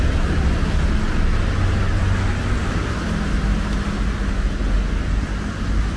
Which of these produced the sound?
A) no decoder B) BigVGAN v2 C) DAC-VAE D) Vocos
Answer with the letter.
A